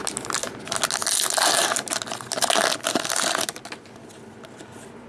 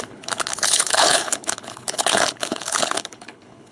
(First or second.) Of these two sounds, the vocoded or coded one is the second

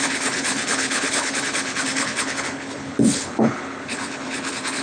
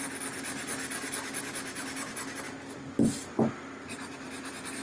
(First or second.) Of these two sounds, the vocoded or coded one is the first